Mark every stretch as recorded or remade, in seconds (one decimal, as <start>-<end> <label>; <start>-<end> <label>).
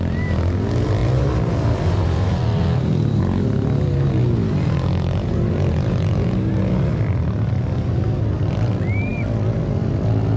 0.0-1.0 recorded; 1.0-3.2 remade; 3.2-10.4 recorded